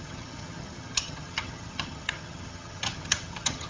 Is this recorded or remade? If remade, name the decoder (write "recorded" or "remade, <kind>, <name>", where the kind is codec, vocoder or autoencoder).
remade, vocoder, HiFi-GAN